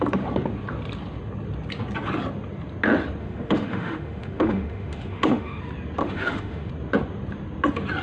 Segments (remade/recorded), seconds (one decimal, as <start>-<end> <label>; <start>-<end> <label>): 0.0-3.2 recorded; 3.2-5.6 remade; 5.6-6.0 recorded; 6.0-6.7 remade; 6.7-8.0 recorded

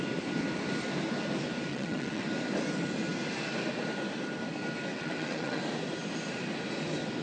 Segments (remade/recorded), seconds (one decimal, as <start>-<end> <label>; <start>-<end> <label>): 0.0-1.7 recorded; 1.7-2.3 remade; 2.3-4.9 recorded; 4.9-5.6 remade; 5.6-7.2 recorded

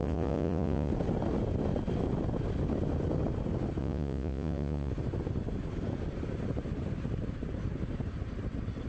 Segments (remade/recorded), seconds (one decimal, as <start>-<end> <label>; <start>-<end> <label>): 0.0-0.9 remade; 0.9-3.8 recorded; 3.8-4.9 remade; 4.9-8.9 recorded

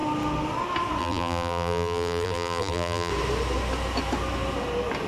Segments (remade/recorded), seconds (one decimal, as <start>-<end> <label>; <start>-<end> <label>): 0.0-1.0 recorded; 1.0-3.1 remade; 3.1-5.1 recorded